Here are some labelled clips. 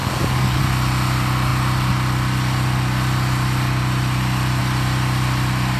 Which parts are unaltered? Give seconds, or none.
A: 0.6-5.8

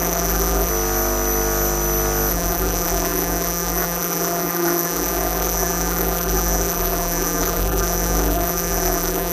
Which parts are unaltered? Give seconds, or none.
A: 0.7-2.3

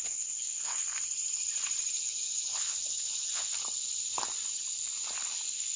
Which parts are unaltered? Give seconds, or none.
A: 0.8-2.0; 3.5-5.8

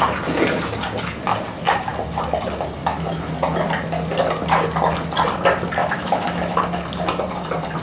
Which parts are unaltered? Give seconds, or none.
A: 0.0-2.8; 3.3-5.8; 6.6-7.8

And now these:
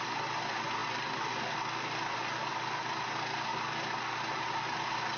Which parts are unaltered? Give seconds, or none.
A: 0.0-5.2

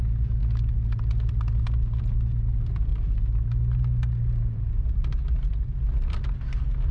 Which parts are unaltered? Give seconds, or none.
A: 0.0-6.9